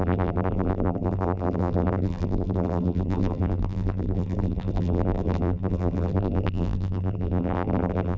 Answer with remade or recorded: remade